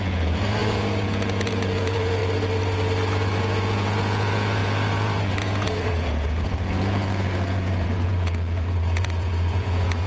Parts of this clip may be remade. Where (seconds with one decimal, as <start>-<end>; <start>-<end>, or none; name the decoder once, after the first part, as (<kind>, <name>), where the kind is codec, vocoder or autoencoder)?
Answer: 0.0-2.2 (vocoder, Vocos); 3.4-10.1